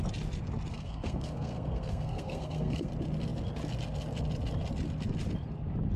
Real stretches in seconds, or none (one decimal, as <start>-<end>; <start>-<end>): 0.0-0.7; 2.9-6.0